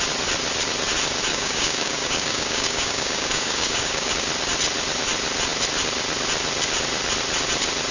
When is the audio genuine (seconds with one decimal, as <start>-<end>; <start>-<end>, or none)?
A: 0.0-1.3; 4.1-7.9